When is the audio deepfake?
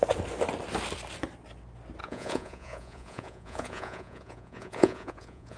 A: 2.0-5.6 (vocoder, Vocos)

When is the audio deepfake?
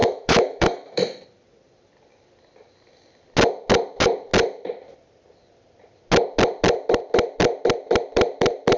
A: 0.0-1.2 (autoencoder, DAC-VAE)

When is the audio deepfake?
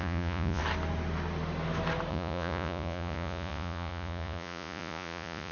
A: 0.0-0.6 (vocoder, Vocos); 2.1-5.5